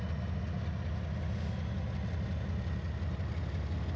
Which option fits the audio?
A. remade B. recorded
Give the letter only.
B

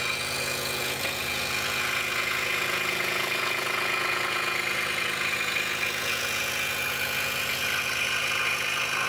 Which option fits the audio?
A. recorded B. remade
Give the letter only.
B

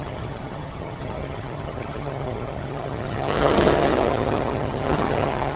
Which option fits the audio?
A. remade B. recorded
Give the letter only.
A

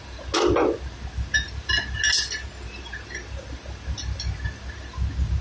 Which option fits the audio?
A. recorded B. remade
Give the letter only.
A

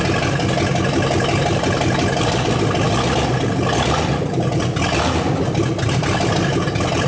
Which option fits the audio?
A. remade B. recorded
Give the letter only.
B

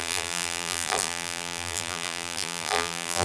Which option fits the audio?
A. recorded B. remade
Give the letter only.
B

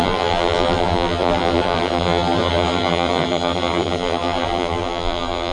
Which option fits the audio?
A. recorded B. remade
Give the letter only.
B